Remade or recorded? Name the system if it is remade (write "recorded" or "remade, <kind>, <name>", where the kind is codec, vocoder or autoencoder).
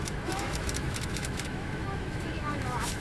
remade, autoencoder, DAC-VAE